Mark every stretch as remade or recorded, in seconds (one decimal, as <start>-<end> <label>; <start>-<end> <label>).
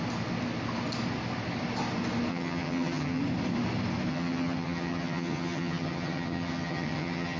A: 0.0-2.3 recorded; 2.3-3.2 remade; 3.2-4.1 recorded; 4.1-7.4 remade